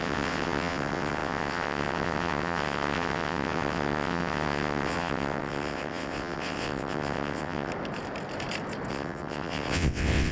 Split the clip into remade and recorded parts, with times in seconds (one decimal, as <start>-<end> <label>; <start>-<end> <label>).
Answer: 0.0-7.7 remade; 7.7-8.9 recorded; 8.9-10.3 remade